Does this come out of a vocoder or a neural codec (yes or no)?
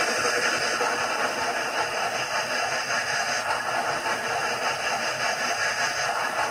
no